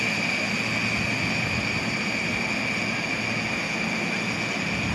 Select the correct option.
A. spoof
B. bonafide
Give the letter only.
B